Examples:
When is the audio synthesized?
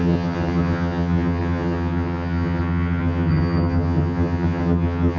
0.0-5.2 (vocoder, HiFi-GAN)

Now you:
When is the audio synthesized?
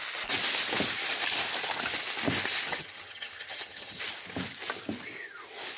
2.7-4.0 (vocoder, HiFi-GAN)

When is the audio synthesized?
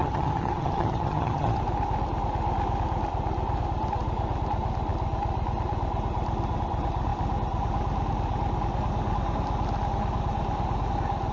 0.0-1.6 (vocoder, HiFi-GAN)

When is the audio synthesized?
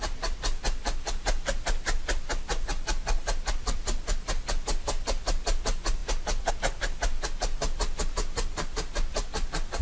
none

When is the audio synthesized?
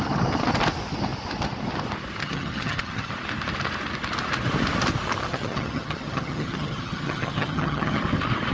2.2-3.1 (vocoder, HiFi-GAN); 5.3-8.0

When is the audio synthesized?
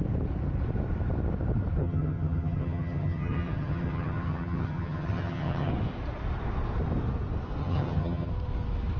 1.8-5.7 (vocoder, HiFi-GAN); 7.6-8.3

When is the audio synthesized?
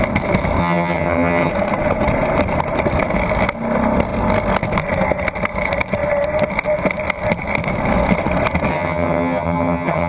0.6-1.5 (vocoder, HiFi-GAN); 8.7-10.1